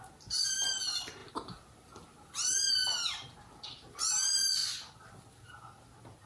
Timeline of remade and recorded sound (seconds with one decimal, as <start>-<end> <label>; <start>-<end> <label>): 0.0-6.3 recorded